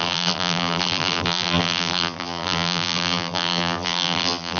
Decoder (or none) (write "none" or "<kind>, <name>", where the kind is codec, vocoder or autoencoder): vocoder, BigVGAN v2